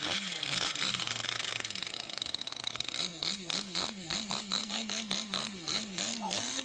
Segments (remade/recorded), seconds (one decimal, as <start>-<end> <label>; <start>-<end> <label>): 0.0-6.6 remade